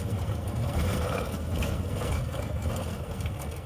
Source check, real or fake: fake